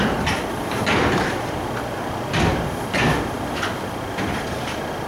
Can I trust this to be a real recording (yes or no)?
yes